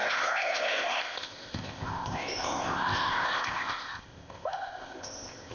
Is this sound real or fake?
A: fake